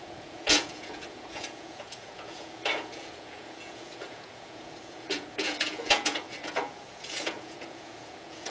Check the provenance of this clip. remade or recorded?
remade